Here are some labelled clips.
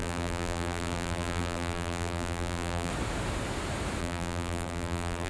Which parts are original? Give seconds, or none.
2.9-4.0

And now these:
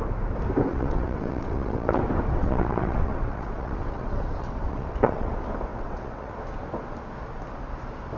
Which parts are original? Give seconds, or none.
0.0-0.7; 2.0-2.4; 5.3-5.7; 6.3-8.2